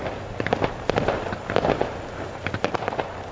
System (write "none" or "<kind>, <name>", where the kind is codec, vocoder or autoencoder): none